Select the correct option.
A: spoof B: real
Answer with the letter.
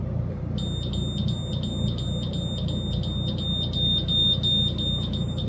B